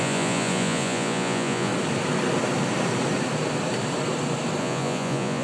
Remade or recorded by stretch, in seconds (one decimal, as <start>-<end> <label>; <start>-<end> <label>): 0.0-1.7 remade; 1.7-4.6 recorded; 4.6-5.4 remade

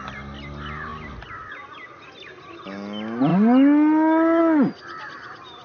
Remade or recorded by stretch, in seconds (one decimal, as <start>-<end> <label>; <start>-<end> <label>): 0.0-5.6 recorded

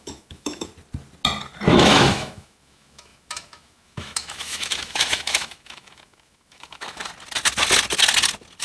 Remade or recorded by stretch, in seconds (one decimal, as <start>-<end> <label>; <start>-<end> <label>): 0.0-0.7 remade; 0.7-1.7 recorded; 1.7-7.0 remade; 7.0-8.6 recorded

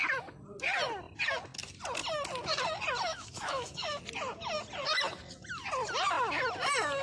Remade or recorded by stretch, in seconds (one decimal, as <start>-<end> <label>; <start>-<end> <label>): 0.0-3.1 recorded; 3.1-4.0 remade; 4.0-7.0 recorded